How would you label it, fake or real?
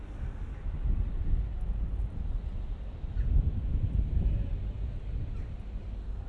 real